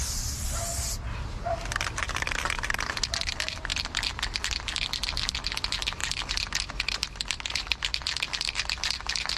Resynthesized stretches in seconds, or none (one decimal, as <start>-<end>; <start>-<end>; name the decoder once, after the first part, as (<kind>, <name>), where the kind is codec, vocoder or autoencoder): 0.0-0.8 (vocoder, BigVGAN v2); 3.7-4.6; 6.0-6.5